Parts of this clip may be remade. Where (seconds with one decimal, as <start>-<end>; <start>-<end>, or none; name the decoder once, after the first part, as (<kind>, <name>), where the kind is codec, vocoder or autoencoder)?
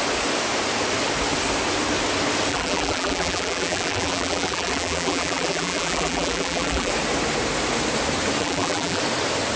2.5-6.9 (vocoder, BigVGAN v2); 8.4-9.0